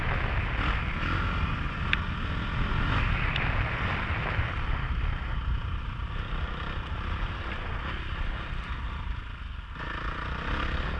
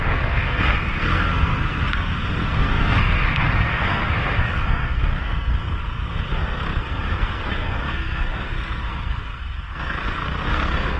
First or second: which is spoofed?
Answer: second